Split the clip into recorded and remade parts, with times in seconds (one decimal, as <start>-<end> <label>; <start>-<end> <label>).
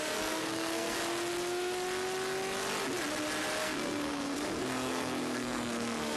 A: 0.0-1.0 remade; 1.0-3.6 recorded; 3.6-6.2 remade